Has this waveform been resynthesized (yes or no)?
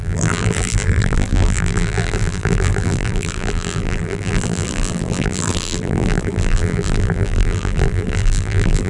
yes